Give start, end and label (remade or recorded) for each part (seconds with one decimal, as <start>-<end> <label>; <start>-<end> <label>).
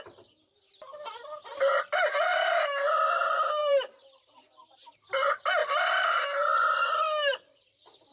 0.0-2.3 recorded; 2.3-2.9 remade; 2.9-3.6 recorded; 3.6-4.3 remade; 4.3-8.1 recorded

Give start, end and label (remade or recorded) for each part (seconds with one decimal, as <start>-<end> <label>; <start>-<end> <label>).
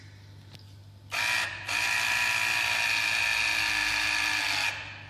0.0-5.1 recorded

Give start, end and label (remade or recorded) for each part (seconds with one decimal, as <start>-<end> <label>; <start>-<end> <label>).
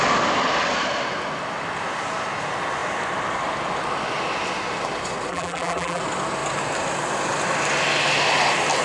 0.0-5.3 recorded; 5.3-6.0 remade; 6.0-8.8 recorded